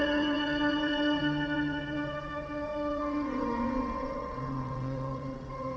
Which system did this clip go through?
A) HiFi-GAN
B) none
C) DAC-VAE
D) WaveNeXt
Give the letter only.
D